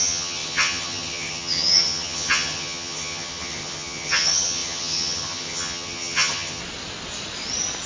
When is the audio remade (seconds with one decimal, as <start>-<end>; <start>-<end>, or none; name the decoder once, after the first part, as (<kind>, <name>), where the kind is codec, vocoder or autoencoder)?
0.0-6.6 (vocoder, HiFi-GAN)